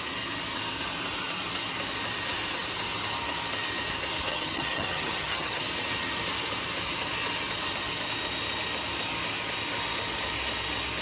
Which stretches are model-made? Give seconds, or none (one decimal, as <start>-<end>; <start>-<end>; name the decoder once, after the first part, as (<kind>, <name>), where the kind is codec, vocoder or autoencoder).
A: 4.3-5.6 (vocoder, HiFi-GAN)